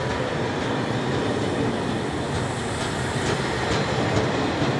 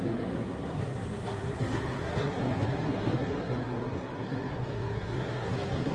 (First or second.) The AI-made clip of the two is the second